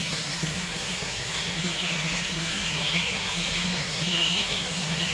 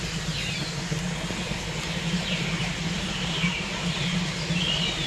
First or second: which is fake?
first